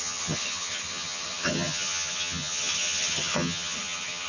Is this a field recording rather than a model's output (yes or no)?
no